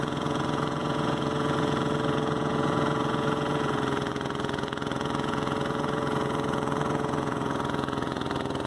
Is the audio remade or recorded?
remade